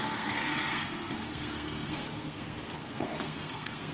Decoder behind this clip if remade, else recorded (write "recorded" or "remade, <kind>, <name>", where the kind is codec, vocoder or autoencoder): remade, codec, SNAC